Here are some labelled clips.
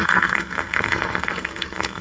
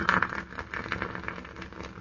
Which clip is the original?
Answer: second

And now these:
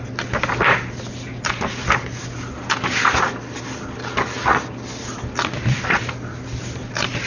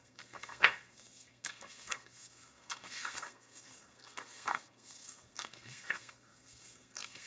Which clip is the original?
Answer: first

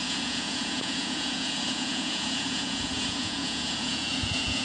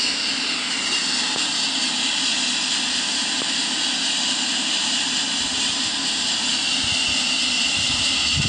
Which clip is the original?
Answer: second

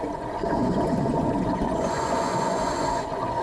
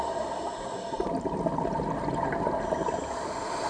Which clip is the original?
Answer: second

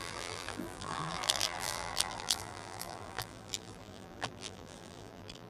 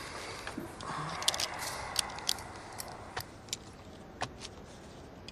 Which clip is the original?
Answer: second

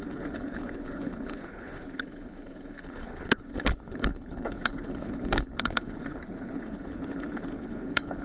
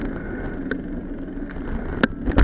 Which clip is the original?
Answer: second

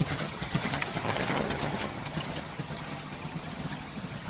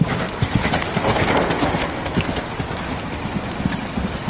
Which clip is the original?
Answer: second